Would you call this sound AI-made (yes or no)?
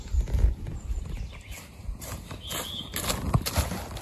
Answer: no